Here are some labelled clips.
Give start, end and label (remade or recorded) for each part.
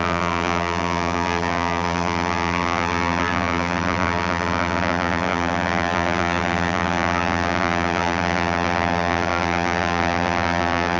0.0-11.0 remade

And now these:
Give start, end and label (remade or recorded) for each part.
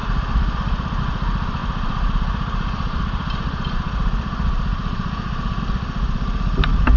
0.0-1.0 remade; 1.0-1.6 recorded; 1.6-5.6 remade; 5.6-7.0 recorded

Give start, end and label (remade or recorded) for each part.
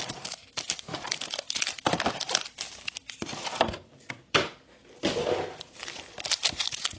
0.0-0.9 recorded; 0.9-2.1 remade; 2.1-3.0 recorded; 3.0-5.8 remade; 5.8-7.0 recorded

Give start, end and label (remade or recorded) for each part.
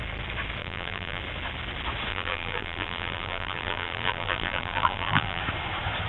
0.0-0.6 recorded; 0.6-1.2 remade; 1.2-2.1 recorded; 2.1-5.4 remade; 5.4-6.1 recorded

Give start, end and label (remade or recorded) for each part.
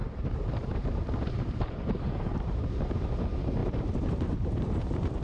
0.0-3.1 remade; 3.1-3.6 recorded; 3.6-5.2 remade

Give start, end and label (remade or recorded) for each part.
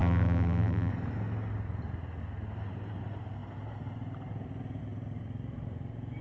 0.0-0.9 remade; 0.9-6.2 recorded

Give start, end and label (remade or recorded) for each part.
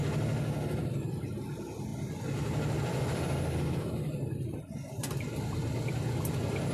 0.0-1.9 recorded; 1.9-4.6 remade; 4.6-5.0 recorded; 5.0-6.0 remade; 6.0-6.7 recorded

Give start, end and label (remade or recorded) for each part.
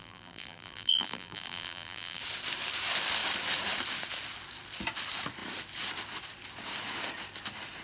0.0-2.2 remade; 2.2-7.8 recorded